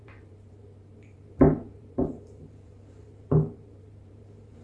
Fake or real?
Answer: fake